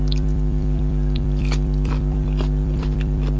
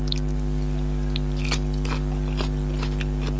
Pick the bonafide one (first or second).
second